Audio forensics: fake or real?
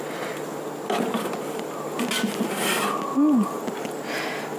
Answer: real